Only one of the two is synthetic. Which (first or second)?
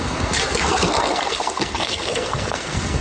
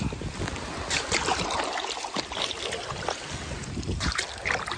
first